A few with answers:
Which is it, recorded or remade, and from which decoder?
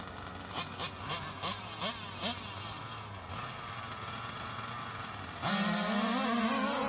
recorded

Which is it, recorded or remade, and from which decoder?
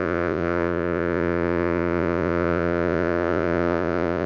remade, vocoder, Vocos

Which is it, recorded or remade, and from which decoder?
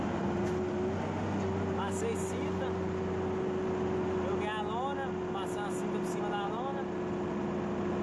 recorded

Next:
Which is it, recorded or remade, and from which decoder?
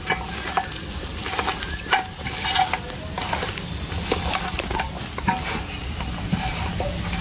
recorded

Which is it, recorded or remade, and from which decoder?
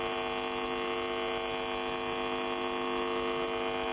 recorded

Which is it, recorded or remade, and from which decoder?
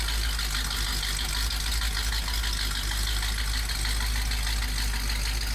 recorded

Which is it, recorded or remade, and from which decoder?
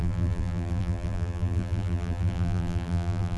remade, vocoder, BigVGAN v2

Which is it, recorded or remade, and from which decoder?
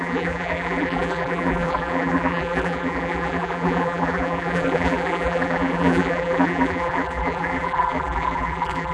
remade, vocoder, BigVGAN v2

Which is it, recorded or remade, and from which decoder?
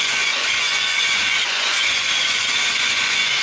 remade, vocoder, Vocos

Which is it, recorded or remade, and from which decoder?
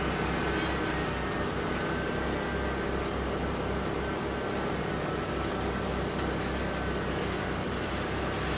recorded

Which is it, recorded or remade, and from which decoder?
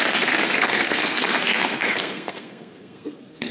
remade, codec, SNAC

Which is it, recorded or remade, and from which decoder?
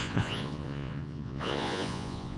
remade, vocoder, Vocos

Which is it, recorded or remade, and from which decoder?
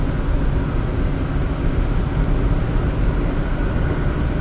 recorded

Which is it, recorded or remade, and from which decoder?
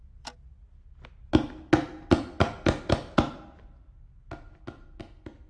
recorded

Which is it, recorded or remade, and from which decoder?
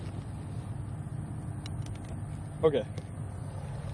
recorded